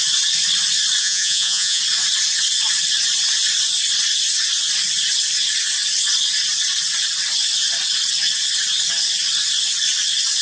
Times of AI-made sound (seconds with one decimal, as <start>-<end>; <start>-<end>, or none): 1.0-1.8